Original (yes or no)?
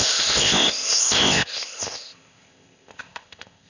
no